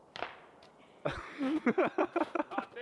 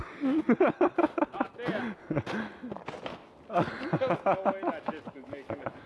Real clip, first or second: second